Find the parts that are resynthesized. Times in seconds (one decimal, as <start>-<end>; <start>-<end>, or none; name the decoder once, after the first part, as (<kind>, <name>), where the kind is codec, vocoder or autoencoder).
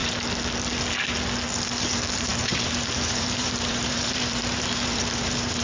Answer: 1.8-5.6 (vocoder, BigVGAN v2)